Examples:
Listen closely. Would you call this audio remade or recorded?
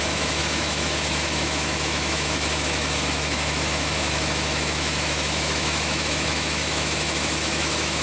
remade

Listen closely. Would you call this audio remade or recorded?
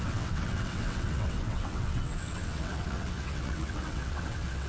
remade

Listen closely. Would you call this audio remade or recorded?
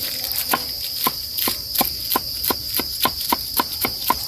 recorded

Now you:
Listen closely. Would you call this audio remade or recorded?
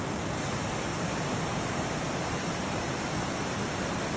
recorded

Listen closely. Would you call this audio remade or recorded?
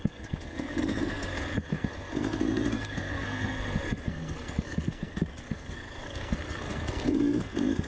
remade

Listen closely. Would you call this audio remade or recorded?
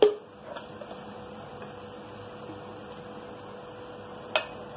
recorded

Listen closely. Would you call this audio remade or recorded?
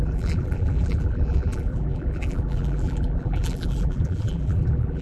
remade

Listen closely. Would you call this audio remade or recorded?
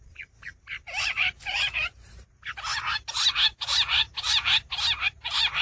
remade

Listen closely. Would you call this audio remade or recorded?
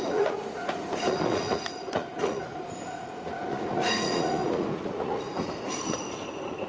remade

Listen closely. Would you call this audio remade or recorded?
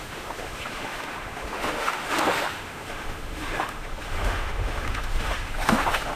remade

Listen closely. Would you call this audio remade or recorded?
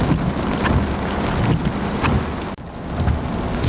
recorded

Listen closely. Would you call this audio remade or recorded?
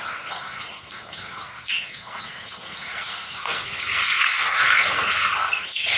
remade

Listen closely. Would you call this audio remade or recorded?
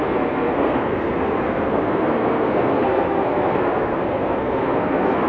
remade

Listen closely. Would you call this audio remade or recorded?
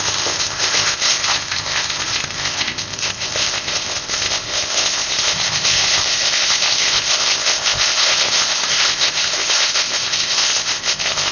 remade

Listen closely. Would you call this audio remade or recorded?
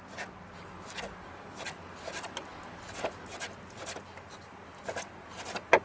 recorded